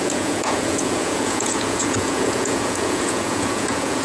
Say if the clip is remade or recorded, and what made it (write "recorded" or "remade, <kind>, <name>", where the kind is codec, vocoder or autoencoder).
remade, vocoder, Vocos